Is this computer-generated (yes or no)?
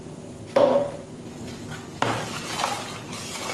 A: no